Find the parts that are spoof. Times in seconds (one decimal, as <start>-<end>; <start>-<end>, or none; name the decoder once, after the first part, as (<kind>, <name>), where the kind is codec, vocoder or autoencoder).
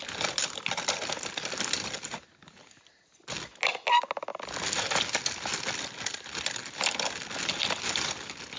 none